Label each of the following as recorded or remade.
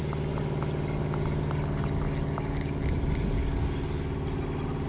recorded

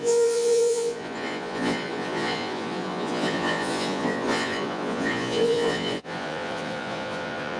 remade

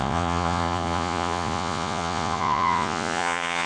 remade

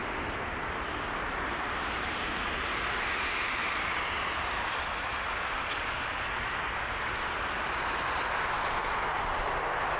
recorded